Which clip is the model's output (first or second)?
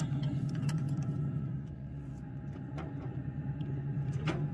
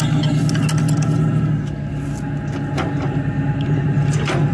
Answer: first